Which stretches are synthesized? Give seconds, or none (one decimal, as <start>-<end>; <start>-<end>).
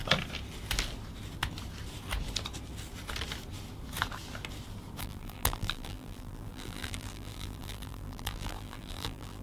5.0-9.4